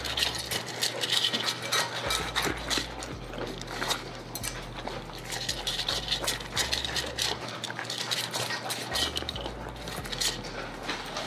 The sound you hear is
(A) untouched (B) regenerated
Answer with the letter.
A